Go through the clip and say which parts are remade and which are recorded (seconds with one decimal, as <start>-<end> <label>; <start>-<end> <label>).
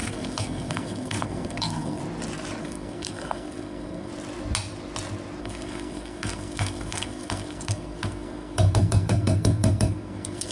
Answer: 0.0-2.0 remade; 2.0-2.6 recorded; 2.6-4.1 remade; 4.1-5.4 recorded; 5.4-10.5 remade